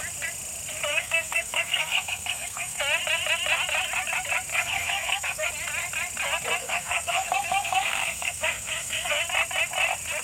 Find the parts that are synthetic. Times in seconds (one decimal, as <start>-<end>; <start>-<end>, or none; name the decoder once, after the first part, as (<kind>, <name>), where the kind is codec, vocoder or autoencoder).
0.9-2.8 (codec, SNAC); 4.5-5.5; 6.6-9.2